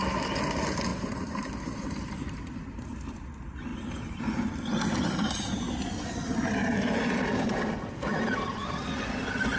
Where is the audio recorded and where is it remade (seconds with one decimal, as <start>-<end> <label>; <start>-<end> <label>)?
0.0-0.9 recorded; 0.9-2.8 remade; 2.8-3.7 recorded; 3.7-7.7 remade; 7.7-9.6 recorded

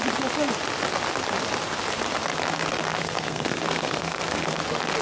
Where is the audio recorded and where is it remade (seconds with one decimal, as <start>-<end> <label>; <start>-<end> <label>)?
0.0-3.0 recorded; 3.0-4.6 remade; 4.6-5.0 recorded

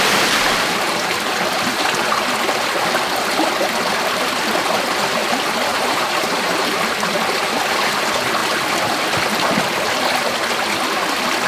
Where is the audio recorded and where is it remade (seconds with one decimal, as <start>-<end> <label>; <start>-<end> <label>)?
0.0-5.7 recorded; 5.7-6.9 remade; 6.9-11.5 recorded

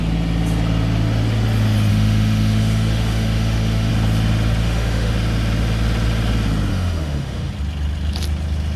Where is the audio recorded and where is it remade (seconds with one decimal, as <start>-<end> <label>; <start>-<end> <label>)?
0.0-1.9 recorded; 1.9-3.9 remade; 3.9-4.6 recorded; 4.6-5.1 remade; 5.1-6.7 recorded; 6.7-7.5 remade; 7.5-8.8 recorded

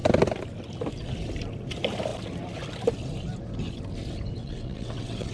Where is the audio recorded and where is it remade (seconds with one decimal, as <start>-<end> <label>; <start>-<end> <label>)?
0.0-4.4 recorded; 4.4-5.3 remade

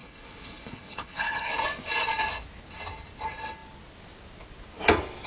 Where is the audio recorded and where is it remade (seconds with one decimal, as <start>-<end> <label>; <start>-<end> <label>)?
0.0-1.5 remade; 1.5-5.3 recorded